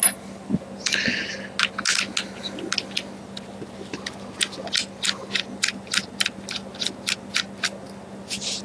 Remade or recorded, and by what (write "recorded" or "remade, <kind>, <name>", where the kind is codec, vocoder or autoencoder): recorded